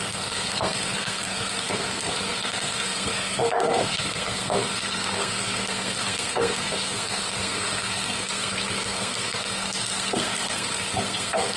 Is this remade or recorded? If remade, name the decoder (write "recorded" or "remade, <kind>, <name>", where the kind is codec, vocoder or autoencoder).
remade, codec, SNAC